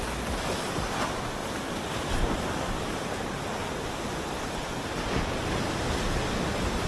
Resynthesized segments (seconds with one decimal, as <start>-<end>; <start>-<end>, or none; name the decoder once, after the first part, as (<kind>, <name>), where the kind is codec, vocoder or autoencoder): none